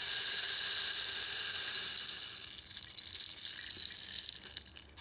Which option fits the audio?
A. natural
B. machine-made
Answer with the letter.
A